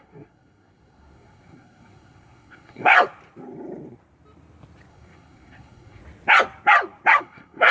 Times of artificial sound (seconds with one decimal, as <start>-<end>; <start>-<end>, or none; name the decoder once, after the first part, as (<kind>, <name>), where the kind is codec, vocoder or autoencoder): 0.0-2.9 (codec, SNAC); 4.9-6.0; 7.2-7.7